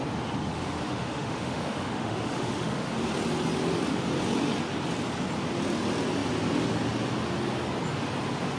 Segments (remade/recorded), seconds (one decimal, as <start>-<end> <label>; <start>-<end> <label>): 0.0-0.5 recorded; 0.5-2.9 remade; 2.9-8.6 recorded